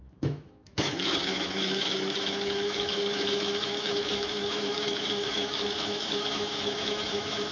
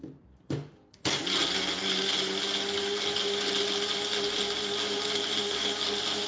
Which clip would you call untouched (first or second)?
second